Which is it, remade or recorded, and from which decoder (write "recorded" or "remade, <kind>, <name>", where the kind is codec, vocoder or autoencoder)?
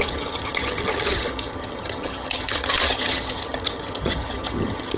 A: remade, vocoder, HiFi-GAN